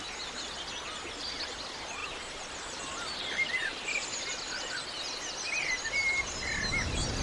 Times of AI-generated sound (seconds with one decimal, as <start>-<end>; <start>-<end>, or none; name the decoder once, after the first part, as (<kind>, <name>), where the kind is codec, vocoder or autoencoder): 2.0-2.8 (vocoder, BigVGAN v2); 5.6-6.3